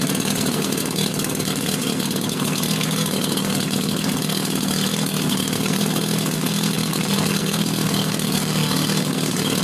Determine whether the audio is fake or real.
fake